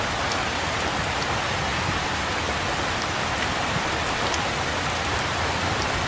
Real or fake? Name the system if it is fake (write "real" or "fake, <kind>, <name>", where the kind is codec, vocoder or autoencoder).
real